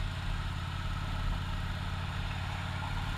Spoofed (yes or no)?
no